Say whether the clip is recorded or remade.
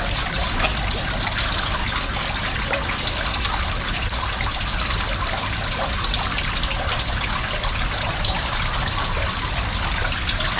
recorded